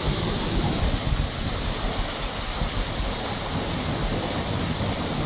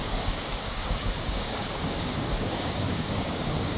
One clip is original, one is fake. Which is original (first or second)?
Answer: first